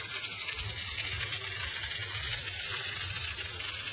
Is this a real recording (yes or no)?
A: yes